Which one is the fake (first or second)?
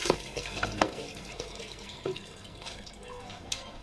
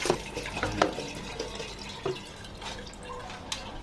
first